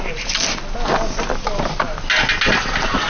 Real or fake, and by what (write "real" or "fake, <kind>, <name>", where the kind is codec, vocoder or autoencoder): real